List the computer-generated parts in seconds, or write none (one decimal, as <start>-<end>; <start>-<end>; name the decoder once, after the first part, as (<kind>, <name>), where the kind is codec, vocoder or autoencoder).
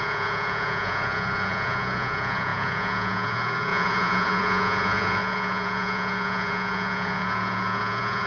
0.0-8.3 (vocoder, Vocos)